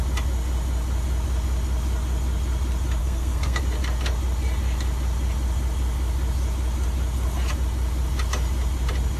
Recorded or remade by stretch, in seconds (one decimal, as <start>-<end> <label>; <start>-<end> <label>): 0.0-3.0 recorded; 3.0-3.6 remade; 3.6-9.2 recorded